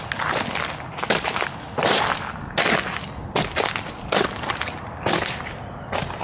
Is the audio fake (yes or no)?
no